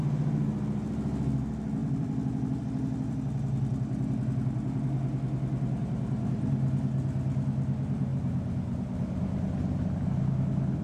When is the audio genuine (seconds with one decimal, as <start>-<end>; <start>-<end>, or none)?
0.0-1.8; 2.6-10.8